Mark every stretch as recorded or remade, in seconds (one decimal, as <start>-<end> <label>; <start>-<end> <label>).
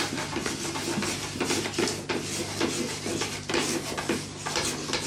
0.0-0.4 recorded; 0.4-3.5 remade; 3.5-5.1 recorded